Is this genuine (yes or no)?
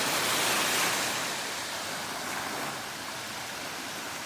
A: yes